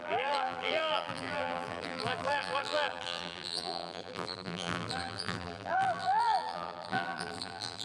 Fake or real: fake